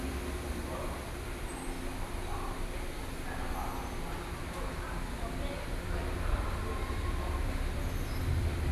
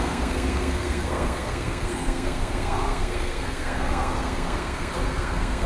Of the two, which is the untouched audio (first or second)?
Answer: first